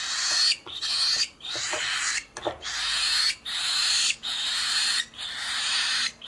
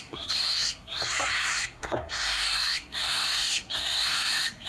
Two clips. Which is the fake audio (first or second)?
second